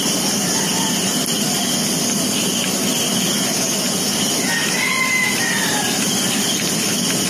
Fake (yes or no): no